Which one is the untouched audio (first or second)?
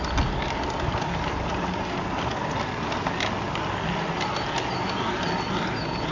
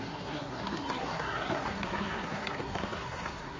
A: first